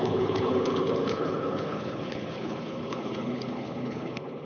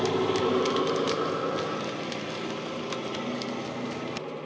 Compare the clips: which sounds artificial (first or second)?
first